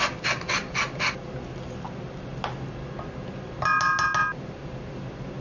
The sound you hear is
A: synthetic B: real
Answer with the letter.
B